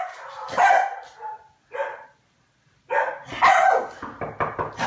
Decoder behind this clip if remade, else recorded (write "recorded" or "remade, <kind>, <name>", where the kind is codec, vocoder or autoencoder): recorded